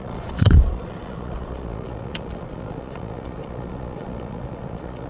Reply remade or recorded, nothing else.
remade